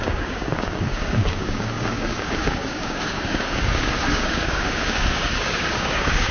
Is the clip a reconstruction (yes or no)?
yes